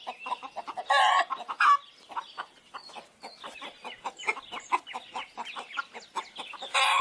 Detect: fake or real real